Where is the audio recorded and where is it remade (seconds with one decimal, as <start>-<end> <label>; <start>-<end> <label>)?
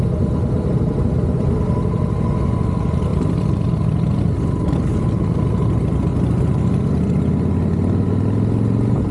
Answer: 0.0-9.1 recorded